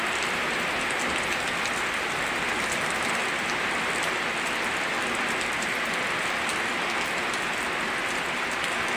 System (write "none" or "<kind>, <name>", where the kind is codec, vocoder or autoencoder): none